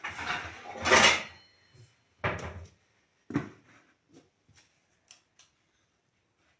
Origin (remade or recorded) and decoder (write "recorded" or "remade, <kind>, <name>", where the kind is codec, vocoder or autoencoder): recorded